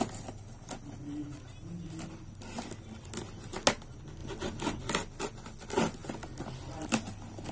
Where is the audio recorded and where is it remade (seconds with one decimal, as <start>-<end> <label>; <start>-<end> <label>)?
0.0-4.2 recorded; 4.2-4.9 remade; 4.9-7.5 recorded